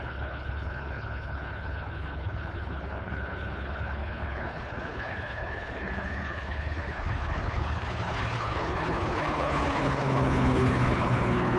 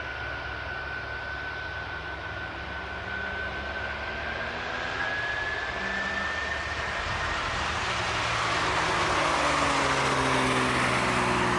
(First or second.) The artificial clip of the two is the first